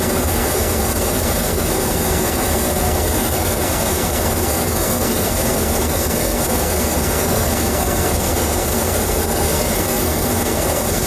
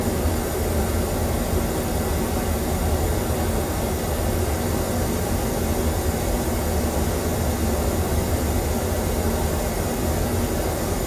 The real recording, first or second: second